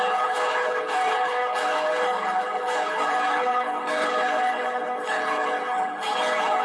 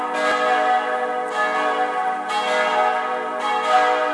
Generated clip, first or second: first